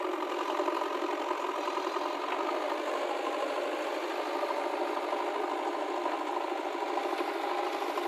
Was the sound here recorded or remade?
recorded